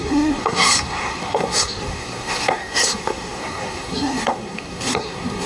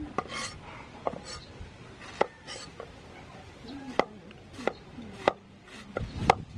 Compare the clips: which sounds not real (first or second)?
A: first